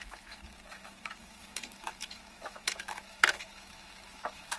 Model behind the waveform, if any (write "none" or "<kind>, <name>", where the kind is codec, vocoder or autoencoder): autoencoder, DAC-VAE